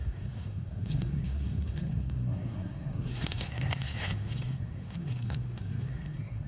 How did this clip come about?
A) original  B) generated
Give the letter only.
B